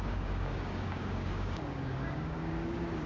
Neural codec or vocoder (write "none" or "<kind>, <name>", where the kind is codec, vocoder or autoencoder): codec, DAC